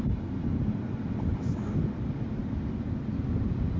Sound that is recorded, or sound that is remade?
recorded